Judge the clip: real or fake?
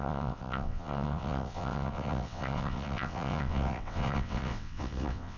fake